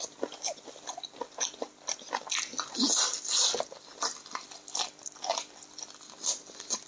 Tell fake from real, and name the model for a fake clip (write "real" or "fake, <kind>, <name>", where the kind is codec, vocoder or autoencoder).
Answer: real